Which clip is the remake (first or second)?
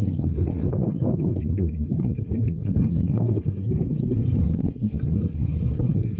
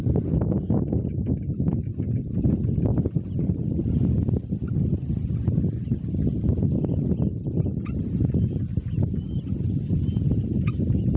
first